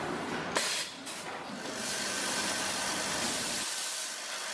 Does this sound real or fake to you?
fake